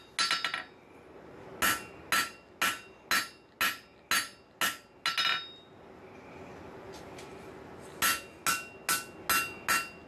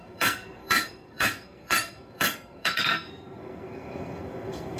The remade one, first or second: second